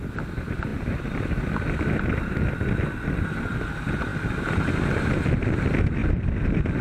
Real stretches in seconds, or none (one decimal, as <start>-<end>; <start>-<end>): 0.0-6.8